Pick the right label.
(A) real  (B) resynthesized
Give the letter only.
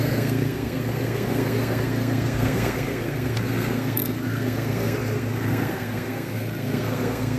B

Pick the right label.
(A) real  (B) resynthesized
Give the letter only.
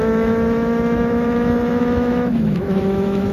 B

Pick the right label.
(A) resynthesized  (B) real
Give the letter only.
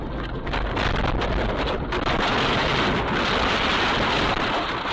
B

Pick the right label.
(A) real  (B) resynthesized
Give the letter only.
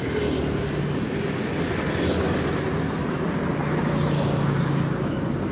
A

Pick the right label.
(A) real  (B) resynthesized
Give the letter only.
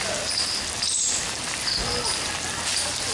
A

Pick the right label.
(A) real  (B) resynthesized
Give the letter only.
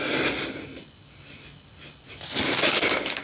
A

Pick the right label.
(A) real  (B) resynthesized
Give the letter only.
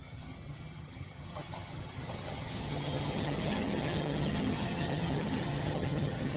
B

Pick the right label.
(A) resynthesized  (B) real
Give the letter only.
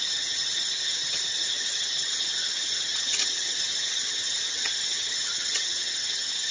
A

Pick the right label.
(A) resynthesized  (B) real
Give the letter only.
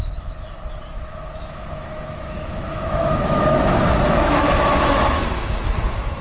A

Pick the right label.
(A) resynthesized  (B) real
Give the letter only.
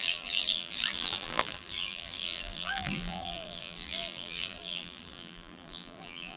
A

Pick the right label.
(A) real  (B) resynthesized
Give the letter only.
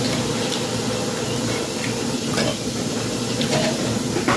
A